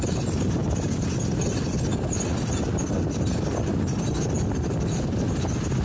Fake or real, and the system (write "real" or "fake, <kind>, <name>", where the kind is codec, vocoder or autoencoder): real